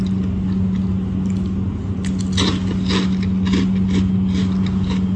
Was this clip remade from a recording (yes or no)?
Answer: no